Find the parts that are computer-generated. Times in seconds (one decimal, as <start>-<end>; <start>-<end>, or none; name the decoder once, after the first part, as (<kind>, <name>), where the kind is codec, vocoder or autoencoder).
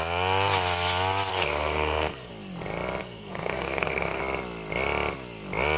1.3-2.3 (codec, SNAC); 3.0-4.2